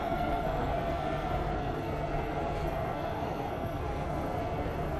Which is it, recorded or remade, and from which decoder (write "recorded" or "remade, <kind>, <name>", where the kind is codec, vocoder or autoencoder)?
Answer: remade, codec, SNAC